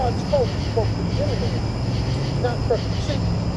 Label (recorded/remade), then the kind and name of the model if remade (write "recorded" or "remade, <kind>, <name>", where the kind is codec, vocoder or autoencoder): recorded